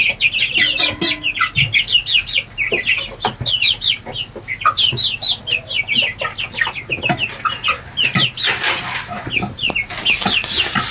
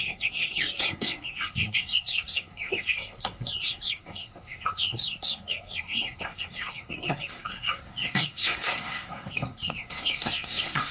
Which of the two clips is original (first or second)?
first